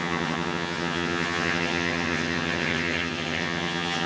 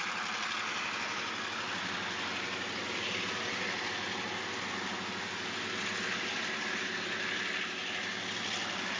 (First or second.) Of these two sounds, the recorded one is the second